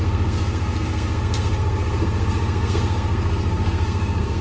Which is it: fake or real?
fake